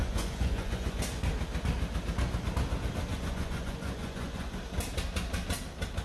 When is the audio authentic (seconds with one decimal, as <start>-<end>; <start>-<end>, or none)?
1.0-3.1; 4.5-6.0